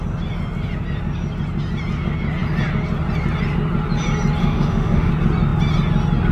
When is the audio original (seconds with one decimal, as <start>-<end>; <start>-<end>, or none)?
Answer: 0.0-4.4; 5.1-6.3